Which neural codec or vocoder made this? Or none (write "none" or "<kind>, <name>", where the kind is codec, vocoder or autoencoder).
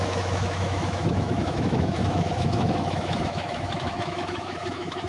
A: autoencoder, DAC-VAE